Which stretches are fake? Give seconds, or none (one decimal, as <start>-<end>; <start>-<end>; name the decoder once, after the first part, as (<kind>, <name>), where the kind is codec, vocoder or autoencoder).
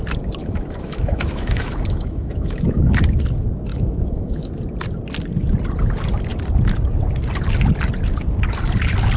0.4-2.9 (autoencoder, DAC-VAE); 3.7-4.5